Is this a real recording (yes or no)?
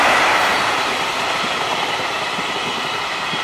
no